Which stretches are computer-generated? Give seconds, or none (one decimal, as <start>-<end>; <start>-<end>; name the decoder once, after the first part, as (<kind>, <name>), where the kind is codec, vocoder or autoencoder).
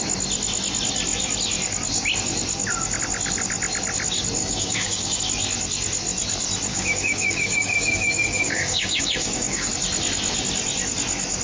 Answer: 4.4-5.2 (codec, DAC); 6.7-9.7